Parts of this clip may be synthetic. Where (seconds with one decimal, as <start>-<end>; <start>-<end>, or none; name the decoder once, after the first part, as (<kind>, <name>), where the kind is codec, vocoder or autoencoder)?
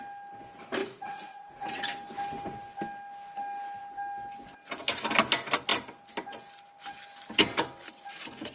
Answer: 0.8-1.8 (vocoder, Vocos)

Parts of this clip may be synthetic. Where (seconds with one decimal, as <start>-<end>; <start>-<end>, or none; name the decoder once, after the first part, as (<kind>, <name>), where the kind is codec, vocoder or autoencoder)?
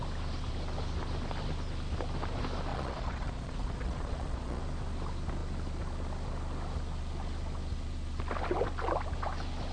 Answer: 2.7-4.6 (vocoder, Vocos)